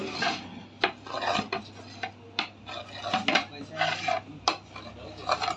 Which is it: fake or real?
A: real